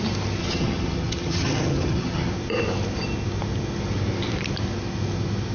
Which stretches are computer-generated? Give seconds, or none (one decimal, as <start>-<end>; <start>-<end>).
0.4-2.3